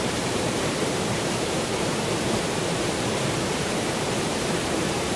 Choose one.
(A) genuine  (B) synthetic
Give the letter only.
B